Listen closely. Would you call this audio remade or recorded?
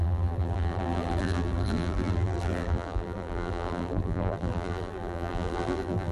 remade